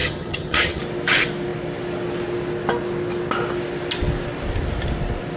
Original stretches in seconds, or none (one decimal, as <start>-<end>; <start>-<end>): 0.8-5.4